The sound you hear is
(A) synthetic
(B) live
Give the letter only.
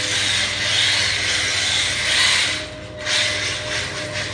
B